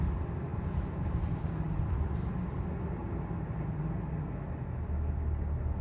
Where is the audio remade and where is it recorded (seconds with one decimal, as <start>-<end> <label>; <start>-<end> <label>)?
0.0-0.5 recorded; 0.5-2.3 remade; 2.3-3.0 recorded; 3.0-4.1 remade; 4.1-5.8 recorded

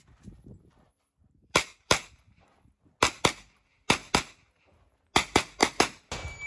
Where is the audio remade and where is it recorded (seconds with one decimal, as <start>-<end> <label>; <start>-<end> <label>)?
0.0-1.4 recorded; 1.4-2.5 remade; 2.5-6.5 recorded

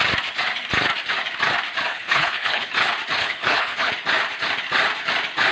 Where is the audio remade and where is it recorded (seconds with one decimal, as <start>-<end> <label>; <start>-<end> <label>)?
0.0-1.9 recorded; 1.9-2.7 remade; 2.7-3.2 recorded; 3.2-3.9 remade; 3.9-5.5 recorded

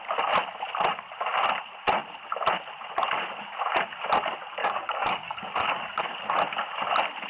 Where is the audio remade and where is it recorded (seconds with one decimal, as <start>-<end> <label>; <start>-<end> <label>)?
0.0-4.6 recorded; 4.6-6.0 remade; 6.0-7.3 recorded

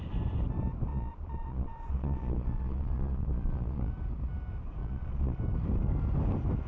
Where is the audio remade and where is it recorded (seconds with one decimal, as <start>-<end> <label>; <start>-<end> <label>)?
0.0-0.9 recorded; 0.9-3.9 remade; 3.9-4.8 recorded; 4.8-5.4 remade; 5.4-6.7 recorded